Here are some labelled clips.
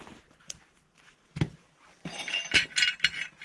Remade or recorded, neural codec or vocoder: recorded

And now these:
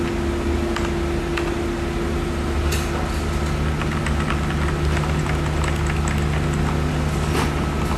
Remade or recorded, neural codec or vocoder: recorded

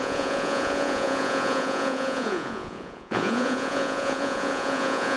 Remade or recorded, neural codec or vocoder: remade, vocoder, Vocos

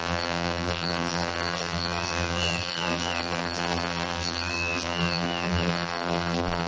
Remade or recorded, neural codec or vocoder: remade, vocoder, BigVGAN v2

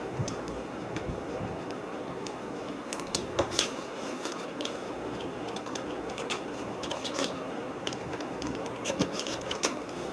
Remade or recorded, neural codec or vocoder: remade, codec, SNAC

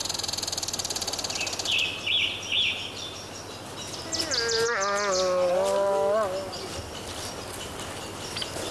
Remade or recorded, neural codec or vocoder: recorded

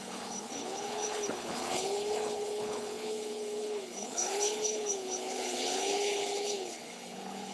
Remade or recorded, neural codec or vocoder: remade, codec, HILCodec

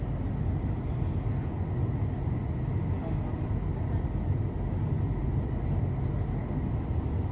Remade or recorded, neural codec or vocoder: recorded